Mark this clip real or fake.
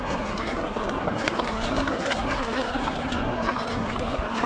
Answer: fake